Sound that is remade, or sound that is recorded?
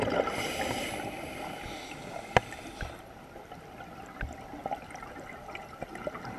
recorded